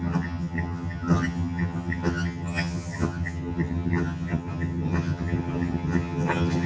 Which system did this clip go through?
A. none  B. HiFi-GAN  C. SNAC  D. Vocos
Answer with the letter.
B